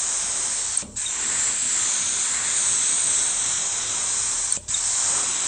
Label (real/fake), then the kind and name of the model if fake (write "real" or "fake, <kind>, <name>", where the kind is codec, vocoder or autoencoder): real